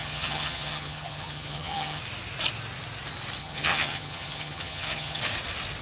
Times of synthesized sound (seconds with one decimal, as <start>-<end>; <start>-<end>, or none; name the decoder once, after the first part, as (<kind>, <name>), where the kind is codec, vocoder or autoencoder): 0.0-2.0 (vocoder, HiFi-GAN); 3.4-5.2